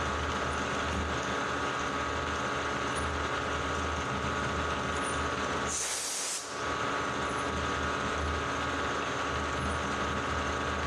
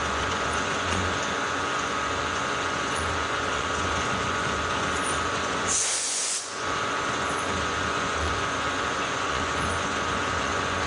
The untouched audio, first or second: first